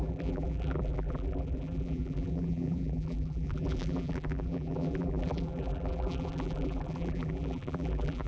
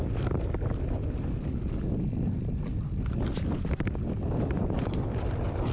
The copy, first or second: first